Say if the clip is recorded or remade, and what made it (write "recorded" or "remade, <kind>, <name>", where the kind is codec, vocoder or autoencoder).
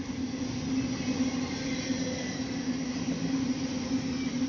recorded